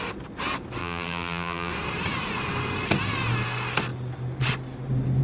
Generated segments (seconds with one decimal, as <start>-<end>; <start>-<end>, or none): 0.8-1.7